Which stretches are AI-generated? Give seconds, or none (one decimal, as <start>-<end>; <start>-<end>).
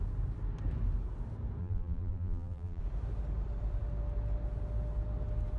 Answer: 1.6-2.8